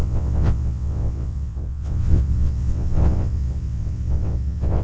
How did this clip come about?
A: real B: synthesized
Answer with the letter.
B